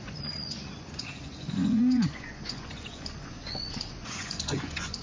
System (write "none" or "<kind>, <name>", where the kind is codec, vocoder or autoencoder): vocoder, Vocos